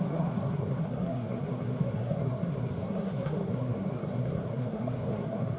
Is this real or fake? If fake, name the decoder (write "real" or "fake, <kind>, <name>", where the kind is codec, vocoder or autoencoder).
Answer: fake, codec, SNAC